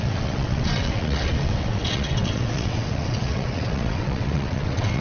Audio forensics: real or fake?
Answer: fake